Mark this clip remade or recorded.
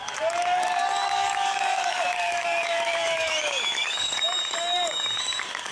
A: remade